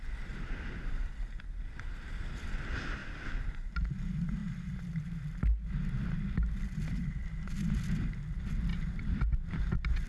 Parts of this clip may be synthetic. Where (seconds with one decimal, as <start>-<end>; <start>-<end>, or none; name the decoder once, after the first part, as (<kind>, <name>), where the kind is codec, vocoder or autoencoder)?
none

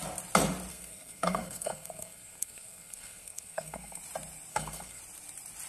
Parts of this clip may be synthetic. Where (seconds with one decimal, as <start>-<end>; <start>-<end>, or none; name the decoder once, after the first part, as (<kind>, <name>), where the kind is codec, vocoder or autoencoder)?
0.7-4.0 (codec, SNAC); 4.5-5.0

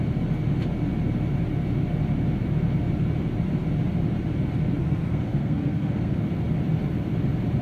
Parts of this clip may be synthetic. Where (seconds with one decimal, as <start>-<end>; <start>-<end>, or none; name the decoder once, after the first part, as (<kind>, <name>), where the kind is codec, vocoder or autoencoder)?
4.8-6.2 (codec, SNAC)

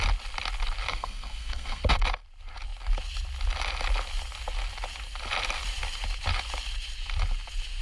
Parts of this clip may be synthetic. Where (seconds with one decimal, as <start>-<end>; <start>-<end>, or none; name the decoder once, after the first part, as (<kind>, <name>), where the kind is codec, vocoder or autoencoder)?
0.9-1.8 (codec, SNAC)

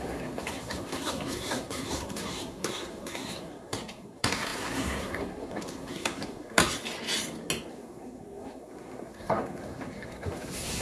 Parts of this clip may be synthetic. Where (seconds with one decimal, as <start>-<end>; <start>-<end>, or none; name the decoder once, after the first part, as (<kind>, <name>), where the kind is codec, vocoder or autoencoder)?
0.0-6.6 (codec, SNAC); 7.7-10.8

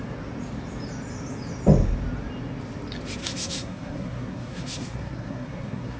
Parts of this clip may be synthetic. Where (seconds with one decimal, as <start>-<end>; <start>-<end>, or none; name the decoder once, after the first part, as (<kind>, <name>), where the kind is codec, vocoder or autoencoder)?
3.2-6.0 (codec, SNAC)